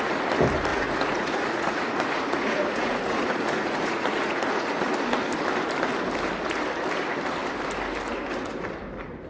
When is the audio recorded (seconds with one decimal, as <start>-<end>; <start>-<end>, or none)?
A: 0.0-0.7; 4.9-9.3